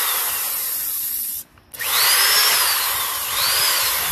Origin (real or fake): real